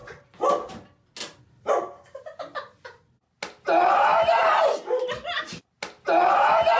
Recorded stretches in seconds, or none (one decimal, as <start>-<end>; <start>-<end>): 0.7-1.2; 1.7-4.1; 5.7-6.8